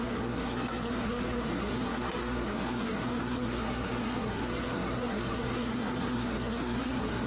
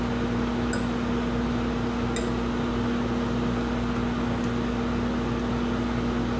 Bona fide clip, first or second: second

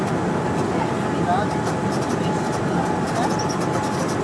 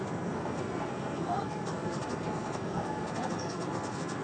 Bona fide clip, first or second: first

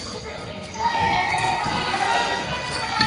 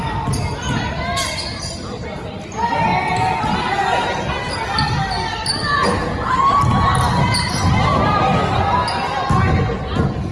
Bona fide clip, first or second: second